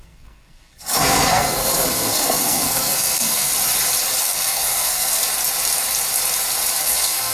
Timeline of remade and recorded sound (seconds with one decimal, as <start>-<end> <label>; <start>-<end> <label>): 0.0-3.5 remade; 3.5-4.2 recorded; 4.2-5.2 remade; 5.2-6.8 recorded; 6.8-7.3 remade